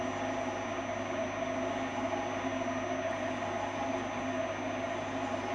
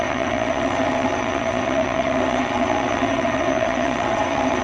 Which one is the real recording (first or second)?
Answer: first